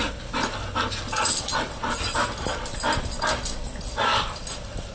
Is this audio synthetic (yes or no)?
no